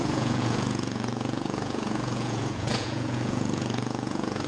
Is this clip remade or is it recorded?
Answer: remade